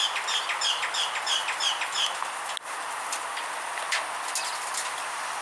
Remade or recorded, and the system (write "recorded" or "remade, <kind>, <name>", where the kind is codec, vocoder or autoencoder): recorded